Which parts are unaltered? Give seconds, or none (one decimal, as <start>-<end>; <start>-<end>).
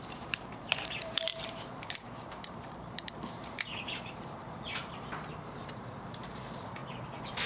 6.8-7.5